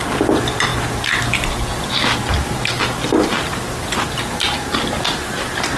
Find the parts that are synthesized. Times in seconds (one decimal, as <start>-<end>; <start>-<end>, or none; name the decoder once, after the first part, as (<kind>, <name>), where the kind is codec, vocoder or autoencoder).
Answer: none